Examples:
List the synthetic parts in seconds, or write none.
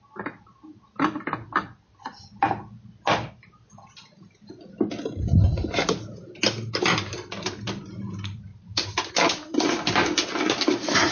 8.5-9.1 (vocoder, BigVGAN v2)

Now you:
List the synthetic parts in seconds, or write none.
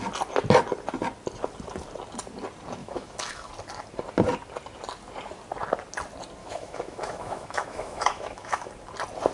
2.8-3.5 (autoencoder, DAC-VAE); 6.4-8.7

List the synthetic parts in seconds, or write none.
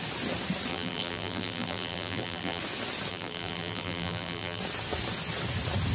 0.7-2.6 (vocoder, BigVGAN v2); 3.1-4.6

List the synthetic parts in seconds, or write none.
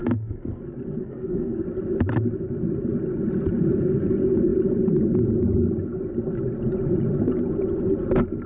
0.0-0.6 (codec, SNAC); 1.0-1.6